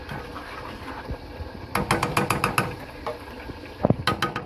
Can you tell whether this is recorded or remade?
recorded